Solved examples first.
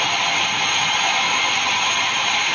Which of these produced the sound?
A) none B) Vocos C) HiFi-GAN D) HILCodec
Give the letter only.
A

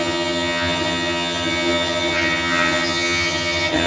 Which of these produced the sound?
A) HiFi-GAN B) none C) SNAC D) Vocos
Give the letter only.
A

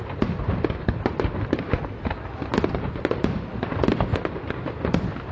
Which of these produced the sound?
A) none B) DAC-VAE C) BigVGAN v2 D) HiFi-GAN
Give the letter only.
A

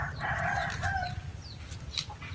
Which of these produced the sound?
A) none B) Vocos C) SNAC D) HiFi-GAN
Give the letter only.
A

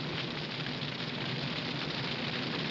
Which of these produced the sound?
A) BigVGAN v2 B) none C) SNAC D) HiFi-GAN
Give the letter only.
B